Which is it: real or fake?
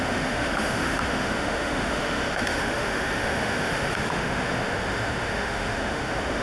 fake